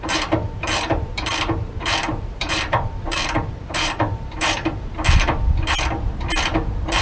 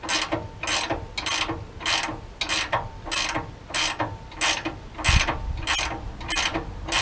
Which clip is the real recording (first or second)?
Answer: second